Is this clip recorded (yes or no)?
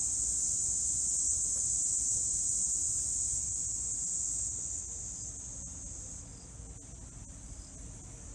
yes